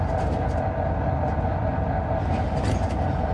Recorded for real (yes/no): yes